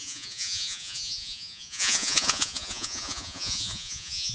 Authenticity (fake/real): fake